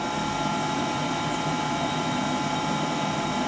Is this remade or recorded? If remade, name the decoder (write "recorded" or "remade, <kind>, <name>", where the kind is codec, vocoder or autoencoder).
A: recorded